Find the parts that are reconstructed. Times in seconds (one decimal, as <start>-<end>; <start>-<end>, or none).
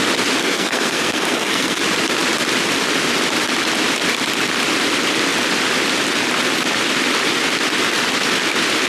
0.4-1.8